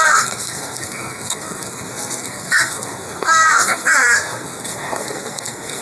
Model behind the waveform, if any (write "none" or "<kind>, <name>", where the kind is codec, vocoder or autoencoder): codec, SNAC